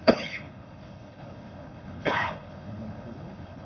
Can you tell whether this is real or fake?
fake